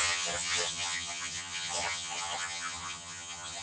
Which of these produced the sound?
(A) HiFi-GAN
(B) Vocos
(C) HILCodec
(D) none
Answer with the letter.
A